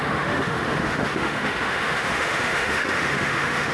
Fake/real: fake